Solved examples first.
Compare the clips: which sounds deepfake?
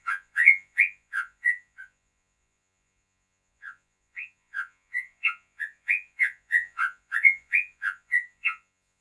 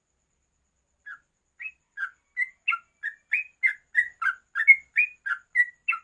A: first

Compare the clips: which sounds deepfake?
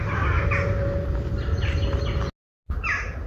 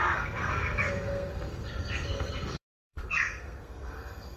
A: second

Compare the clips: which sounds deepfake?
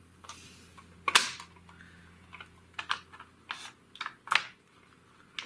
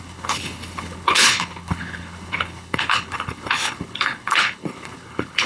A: second